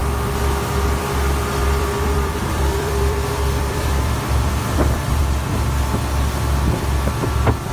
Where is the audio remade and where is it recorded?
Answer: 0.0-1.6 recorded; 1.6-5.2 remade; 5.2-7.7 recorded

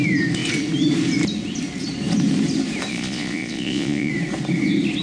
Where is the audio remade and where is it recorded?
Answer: 0.0-2.9 recorded; 2.9-4.1 remade; 4.1-5.0 recorded

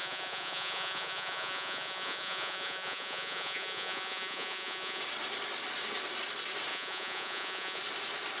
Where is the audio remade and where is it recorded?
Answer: 0.0-5.0 remade; 5.0-6.7 recorded; 6.7-7.8 remade; 7.8-8.4 recorded

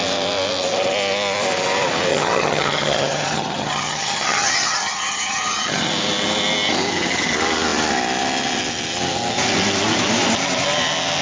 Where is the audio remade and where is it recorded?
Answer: 0.0-2.1 recorded; 2.1-5.9 remade; 5.9-11.2 recorded

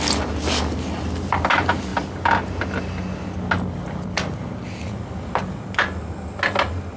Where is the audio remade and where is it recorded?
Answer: 0.0-7.0 recorded

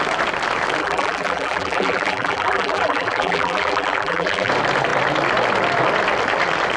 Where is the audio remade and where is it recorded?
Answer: 0.0-0.8 recorded; 0.8-4.5 remade; 4.5-6.8 recorded

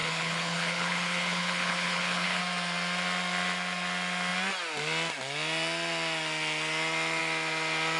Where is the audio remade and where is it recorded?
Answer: 0.0-2.4 remade; 2.4-8.0 recorded